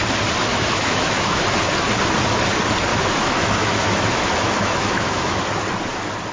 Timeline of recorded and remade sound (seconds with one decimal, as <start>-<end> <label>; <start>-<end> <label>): 0.0-0.5 recorded; 0.5-1.4 remade; 1.4-2.9 recorded; 2.9-5.4 remade; 5.4-6.3 recorded